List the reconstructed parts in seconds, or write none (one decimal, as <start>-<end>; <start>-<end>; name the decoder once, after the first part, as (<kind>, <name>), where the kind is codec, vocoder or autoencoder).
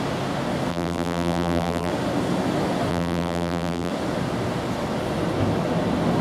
0.7-1.9 (vocoder, BigVGAN v2); 2.9-3.9